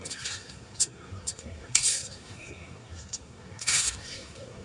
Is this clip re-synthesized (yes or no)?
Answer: yes